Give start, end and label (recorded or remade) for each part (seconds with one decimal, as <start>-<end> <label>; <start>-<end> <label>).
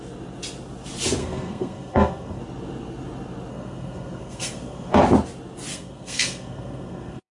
0.0-1.2 recorded; 1.2-2.4 remade; 2.4-3.5 recorded; 3.5-5.0 remade; 5.0-5.7 recorded; 5.7-7.3 remade